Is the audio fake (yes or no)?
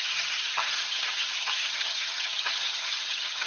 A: yes